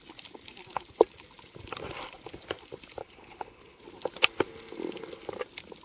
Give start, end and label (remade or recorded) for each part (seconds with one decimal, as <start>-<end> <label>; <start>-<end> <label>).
0.0-3.0 recorded; 3.0-3.8 remade; 3.8-5.8 recorded